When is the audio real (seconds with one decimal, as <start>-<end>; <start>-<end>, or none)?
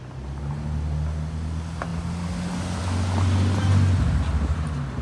0.0-5.0